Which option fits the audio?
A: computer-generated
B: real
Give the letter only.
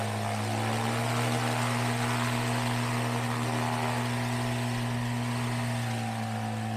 B